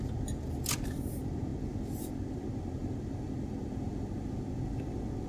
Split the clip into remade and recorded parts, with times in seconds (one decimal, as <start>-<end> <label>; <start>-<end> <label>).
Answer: 0.0-5.3 recorded